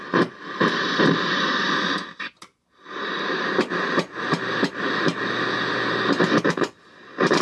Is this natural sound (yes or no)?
yes